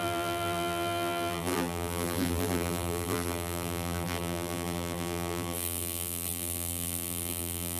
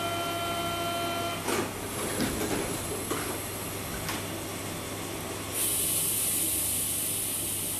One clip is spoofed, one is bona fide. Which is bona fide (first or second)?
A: second